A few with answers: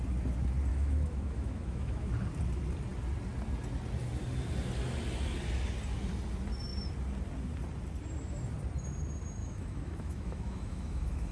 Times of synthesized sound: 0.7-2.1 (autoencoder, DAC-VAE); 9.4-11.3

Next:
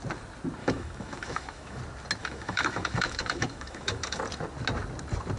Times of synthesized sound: 0.6-1.8 (autoencoder, DAC-VAE); 2.2-4.2

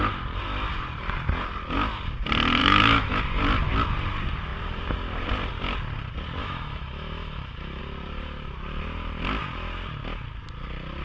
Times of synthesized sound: 2.6-3.2 (autoencoder, DAC-VAE); 6.4-7.8

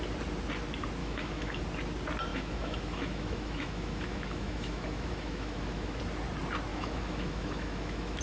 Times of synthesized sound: 1.0-1.6 (autoencoder, DAC-VAE); 2.3-6.0; 6.7-8.2

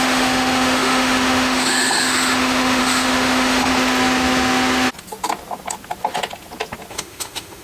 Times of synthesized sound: 0.0-3.7 (autoencoder, DAC-VAE); 6.9-7.6

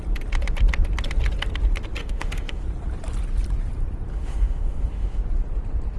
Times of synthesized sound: 2.0-2.6 (autoencoder, DAC-VAE); 4.1-5.2